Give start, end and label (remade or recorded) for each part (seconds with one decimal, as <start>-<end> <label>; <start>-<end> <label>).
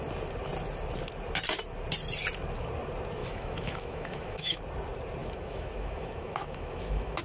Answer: 0.0-3.2 recorded; 3.2-4.6 remade; 4.6-5.2 recorded; 5.2-7.2 remade